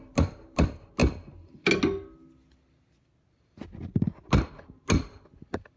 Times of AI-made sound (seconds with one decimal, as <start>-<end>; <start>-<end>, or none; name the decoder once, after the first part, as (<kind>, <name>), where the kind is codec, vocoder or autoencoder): none